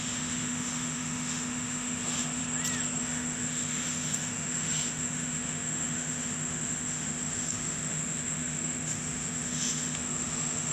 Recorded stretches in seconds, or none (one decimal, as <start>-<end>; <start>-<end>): 2.4-3.0